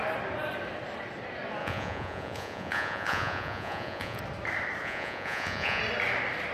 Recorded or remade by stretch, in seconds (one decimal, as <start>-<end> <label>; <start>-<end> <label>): 0.0-1.6 recorded; 1.6-4.2 remade; 4.2-4.8 recorded; 4.8-5.8 remade; 5.8-6.5 recorded